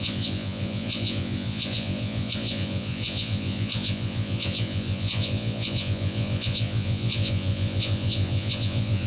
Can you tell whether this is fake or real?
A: fake